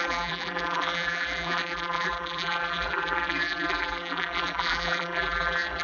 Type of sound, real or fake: fake